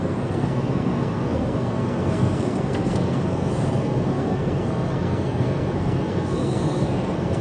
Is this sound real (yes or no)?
no